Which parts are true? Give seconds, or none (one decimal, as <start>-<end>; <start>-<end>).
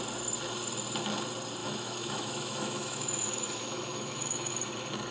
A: 0.0-1.6; 4.5-5.1